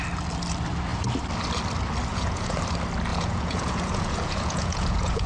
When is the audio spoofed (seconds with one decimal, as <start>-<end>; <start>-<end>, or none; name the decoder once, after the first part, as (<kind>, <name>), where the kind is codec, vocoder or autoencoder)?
2.1-2.6 (vocoder, Vocos); 3.1-5.3